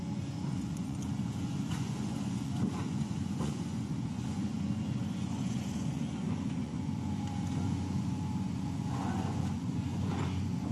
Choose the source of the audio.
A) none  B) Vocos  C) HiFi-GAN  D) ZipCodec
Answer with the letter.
B